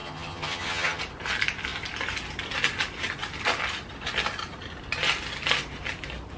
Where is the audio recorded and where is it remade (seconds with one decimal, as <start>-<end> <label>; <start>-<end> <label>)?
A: 0.0-1.0 remade; 1.0-6.4 recorded